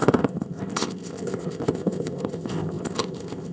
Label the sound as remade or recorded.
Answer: remade